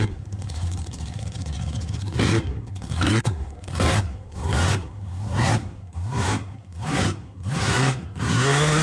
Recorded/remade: remade